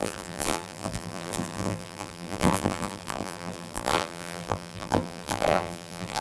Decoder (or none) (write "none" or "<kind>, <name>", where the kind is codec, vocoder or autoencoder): vocoder, BigVGAN v2